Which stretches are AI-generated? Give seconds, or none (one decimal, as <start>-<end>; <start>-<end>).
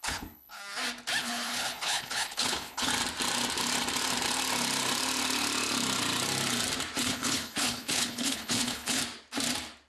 0.0-0.6; 1.2-2.9; 7.0-9.0